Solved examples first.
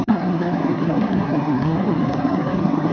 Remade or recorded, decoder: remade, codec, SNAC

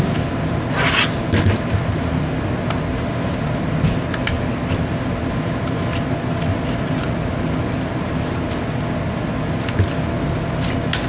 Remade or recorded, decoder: recorded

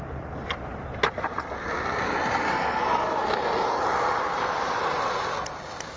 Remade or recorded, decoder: recorded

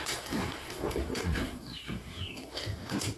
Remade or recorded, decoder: remade, codec, SNAC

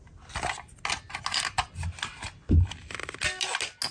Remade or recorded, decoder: recorded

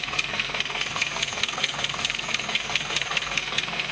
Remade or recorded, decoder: remade, codec, SNAC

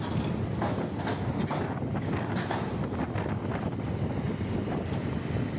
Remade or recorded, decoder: recorded